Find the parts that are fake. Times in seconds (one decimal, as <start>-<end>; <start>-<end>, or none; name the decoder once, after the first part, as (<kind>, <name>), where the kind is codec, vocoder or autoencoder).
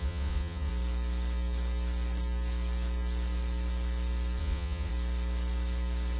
0.0-0.7 (vocoder, Vocos); 4.4-4.9